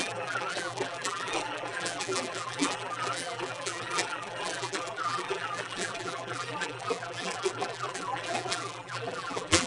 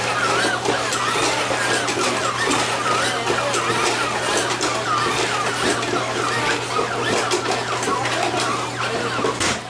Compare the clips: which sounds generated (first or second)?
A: first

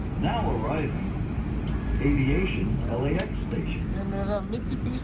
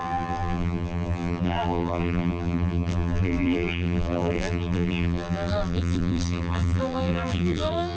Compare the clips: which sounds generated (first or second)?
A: second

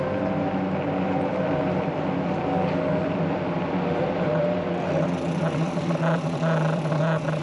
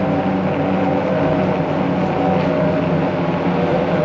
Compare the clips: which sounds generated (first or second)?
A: first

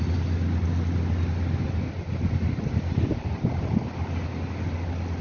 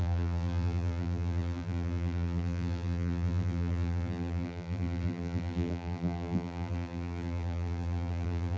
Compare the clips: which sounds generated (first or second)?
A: second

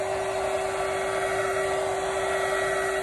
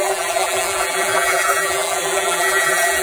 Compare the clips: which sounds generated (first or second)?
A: second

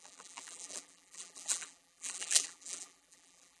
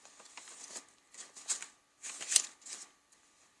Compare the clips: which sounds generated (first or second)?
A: first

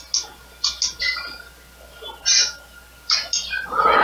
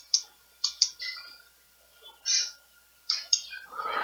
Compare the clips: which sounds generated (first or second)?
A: second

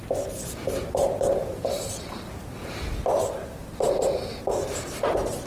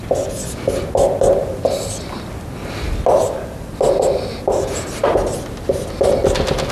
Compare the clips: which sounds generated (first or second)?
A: first